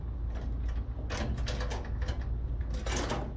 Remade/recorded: recorded